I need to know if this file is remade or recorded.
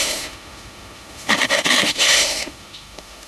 remade